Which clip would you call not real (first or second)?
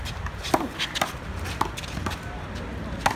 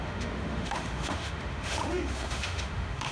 second